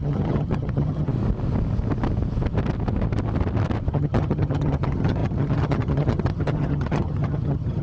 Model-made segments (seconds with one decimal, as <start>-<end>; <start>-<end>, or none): 0.0-1.1; 3.9-7.8